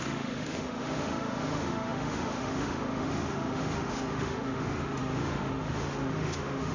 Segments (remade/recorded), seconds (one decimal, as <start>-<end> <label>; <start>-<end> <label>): 0.0-6.7 remade